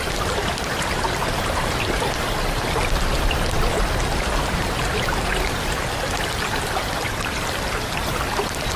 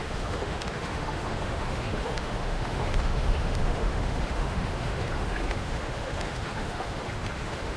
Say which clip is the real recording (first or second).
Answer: first